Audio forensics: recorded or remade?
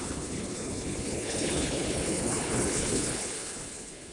remade